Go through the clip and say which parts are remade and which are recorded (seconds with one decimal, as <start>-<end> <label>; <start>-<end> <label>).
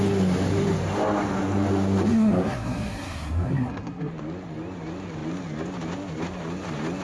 0.0-2.1 recorded; 2.1-4.1 remade; 4.1-7.0 recorded